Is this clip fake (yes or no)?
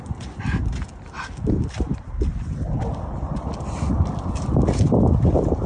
no